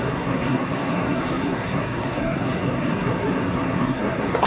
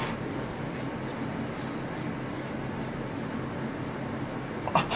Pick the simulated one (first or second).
first